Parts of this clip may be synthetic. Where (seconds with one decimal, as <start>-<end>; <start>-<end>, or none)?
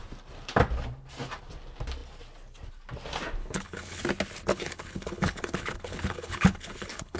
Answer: 3.4-4.0; 4.5-7.2